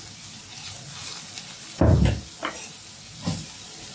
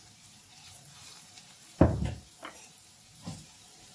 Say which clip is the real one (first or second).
first